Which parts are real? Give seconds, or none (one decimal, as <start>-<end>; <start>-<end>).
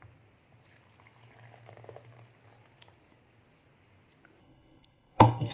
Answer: 0.0-4.4